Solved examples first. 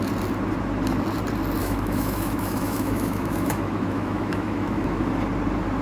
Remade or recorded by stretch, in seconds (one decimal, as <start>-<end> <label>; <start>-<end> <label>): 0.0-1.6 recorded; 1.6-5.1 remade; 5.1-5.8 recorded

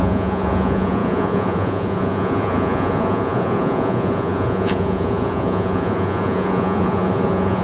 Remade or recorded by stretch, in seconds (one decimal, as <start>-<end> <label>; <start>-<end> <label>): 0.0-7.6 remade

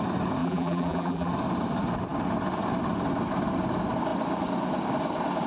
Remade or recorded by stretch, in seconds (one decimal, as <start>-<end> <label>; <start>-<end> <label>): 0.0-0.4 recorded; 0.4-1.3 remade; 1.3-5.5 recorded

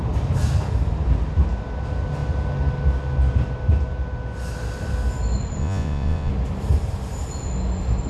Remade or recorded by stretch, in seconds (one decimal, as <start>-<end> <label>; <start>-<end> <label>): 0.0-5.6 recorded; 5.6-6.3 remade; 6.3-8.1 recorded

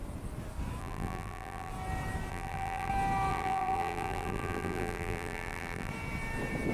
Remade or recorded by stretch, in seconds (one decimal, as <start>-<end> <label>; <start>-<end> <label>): 0.0-0.8 recorded; 0.8-1.7 remade; 1.7-2.3 recorded; 2.3-2.9 remade; 2.9-3.3 recorded; 3.3-5.9 remade; 5.9-6.7 recorded

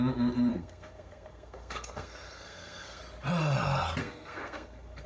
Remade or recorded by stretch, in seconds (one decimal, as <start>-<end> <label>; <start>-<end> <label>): 0.0-0.5 recorded; 0.5-3.0 remade; 3.0-4.0 recorded; 4.0-5.1 remade